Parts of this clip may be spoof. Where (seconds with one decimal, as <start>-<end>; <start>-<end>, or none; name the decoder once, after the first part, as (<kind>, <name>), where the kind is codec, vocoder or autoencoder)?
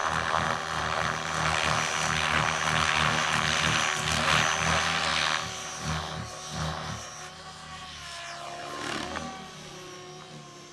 none